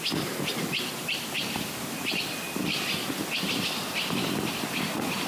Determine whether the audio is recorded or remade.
recorded